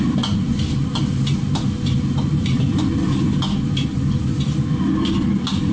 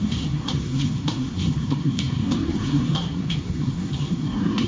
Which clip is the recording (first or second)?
first